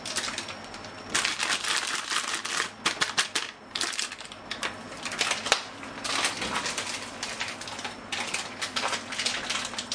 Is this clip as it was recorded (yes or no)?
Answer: yes